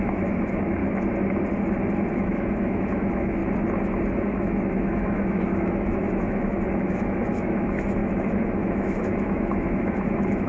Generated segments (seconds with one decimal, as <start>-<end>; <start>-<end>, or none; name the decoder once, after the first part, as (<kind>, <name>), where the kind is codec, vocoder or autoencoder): 0.0-0.8 (autoencoder, DAC-VAE); 2.1-3.4; 4.4-10.5

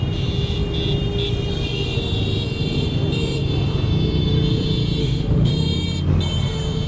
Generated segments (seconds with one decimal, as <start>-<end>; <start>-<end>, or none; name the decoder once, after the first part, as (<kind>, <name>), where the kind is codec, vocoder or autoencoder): 5.0-5.5 (autoencoder, DAC-VAE)

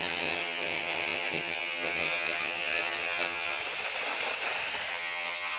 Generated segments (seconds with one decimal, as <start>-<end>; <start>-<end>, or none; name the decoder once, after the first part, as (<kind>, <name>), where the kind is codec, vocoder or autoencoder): 0.0-3.6 (vocoder, HiFi-GAN); 4.9-5.6

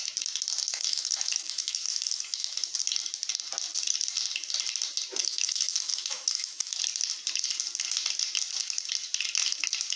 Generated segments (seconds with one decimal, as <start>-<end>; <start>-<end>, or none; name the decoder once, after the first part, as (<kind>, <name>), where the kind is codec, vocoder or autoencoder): 0.7-2.7 (autoencoder, DAC-VAE); 5.2-6.8

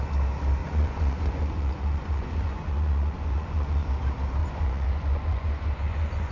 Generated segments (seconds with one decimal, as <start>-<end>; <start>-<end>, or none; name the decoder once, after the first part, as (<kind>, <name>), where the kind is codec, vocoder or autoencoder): 0.6-3.9 (vocoder, Vocos); 4.4-6.3

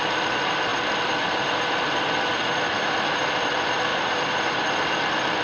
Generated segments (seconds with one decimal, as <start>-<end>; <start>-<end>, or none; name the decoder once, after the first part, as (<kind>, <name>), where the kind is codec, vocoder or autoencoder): 3.9-4.6 (vocoder, BigVGAN v2)